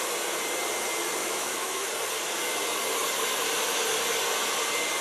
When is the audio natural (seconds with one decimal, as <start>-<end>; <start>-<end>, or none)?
0.0-1.2; 1.9-5.0